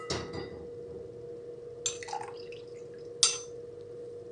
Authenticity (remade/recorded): recorded